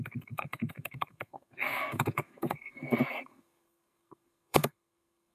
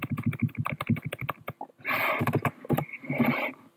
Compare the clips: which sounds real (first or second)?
second